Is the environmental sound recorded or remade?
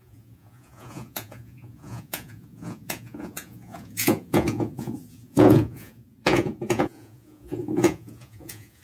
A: remade